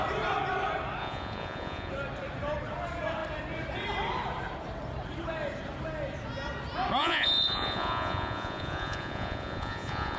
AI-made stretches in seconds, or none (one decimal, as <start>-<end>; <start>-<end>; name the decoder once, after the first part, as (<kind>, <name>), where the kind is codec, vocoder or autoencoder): 1.0-1.9 (vocoder, Vocos); 7.0-10.2